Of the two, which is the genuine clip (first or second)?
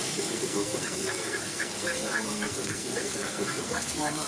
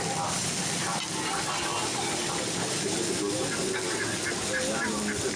second